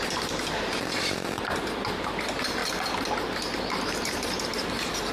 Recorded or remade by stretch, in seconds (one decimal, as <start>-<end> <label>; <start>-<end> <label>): 0.0-2.6 remade; 2.6-3.1 recorded; 3.1-5.1 remade